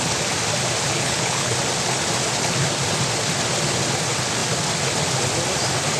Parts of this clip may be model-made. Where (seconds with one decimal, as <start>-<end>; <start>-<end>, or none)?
0.9-1.5